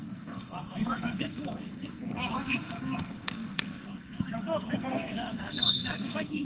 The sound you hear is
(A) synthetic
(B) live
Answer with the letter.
A